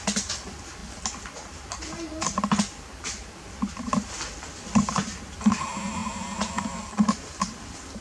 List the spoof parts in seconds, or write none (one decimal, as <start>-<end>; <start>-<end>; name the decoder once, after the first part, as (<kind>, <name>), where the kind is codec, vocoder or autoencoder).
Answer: none